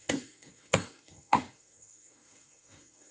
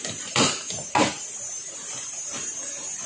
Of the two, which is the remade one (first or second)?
first